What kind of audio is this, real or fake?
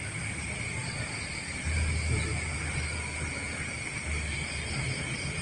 real